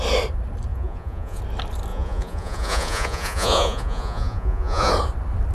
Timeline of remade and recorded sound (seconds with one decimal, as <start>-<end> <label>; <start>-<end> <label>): 0.0-0.7 recorded; 0.7-1.4 remade; 1.4-1.9 recorded; 1.9-4.9 remade; 4.9-5.5 recorded